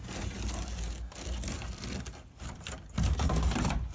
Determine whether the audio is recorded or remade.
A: recorded